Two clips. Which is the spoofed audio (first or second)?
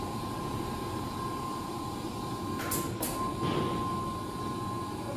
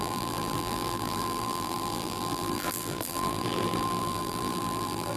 second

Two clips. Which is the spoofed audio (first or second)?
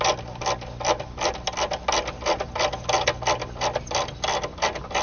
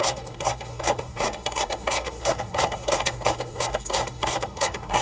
second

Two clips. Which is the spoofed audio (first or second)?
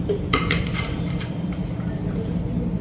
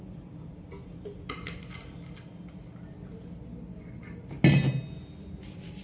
first